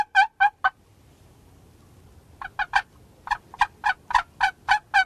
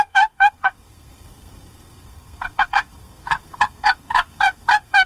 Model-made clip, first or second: second